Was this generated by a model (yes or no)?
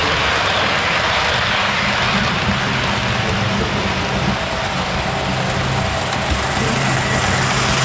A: no